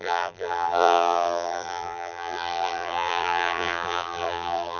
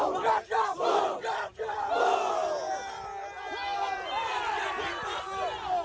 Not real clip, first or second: first